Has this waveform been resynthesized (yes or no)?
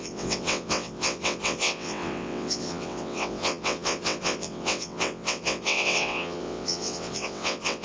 yes